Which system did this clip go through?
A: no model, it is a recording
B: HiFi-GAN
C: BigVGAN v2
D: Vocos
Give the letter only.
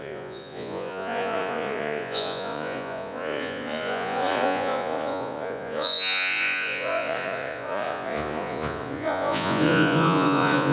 D